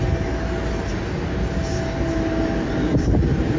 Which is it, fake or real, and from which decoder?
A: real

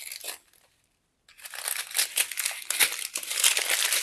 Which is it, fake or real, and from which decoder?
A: real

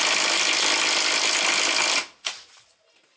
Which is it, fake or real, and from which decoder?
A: real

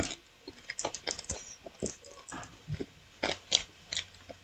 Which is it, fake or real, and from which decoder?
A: real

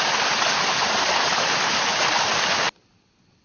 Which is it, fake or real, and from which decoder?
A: real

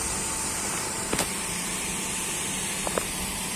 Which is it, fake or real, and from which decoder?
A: fake, vocoder, BigVGAN v2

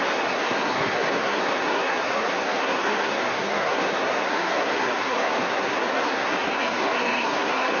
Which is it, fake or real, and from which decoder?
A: fake, codec, SNAC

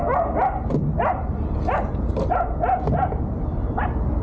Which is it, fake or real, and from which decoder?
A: real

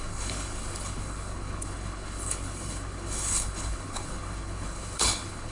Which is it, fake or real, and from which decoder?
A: fake, codec, HILCodec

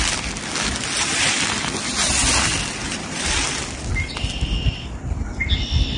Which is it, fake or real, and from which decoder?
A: real